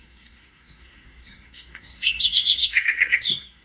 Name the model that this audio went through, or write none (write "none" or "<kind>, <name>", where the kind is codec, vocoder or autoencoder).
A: codec, SNAC